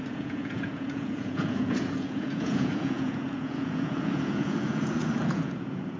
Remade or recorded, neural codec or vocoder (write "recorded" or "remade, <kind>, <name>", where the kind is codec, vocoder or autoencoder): remade, vocoder, Vocos